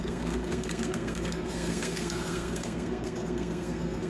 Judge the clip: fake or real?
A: fake